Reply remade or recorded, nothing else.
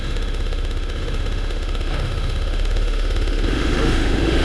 remade